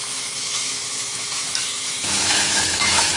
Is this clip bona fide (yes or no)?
no